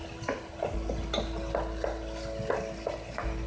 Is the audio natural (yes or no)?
yes